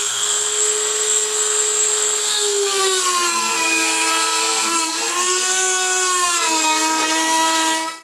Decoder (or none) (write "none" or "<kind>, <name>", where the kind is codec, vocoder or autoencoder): codec, SNAC